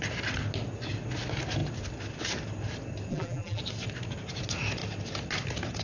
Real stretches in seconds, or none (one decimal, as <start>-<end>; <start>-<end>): 0.0-3.1; 3.6-5.8